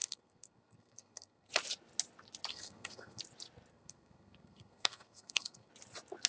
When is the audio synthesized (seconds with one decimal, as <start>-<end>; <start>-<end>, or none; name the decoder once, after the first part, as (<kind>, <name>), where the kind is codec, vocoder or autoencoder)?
0.0-1.5 (codec, SNAC); 2.5-3.2; 3.7-5.7